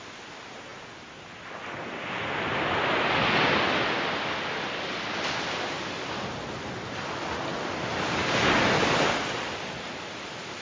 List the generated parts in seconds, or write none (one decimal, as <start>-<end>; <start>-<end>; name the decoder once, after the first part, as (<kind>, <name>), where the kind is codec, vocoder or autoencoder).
none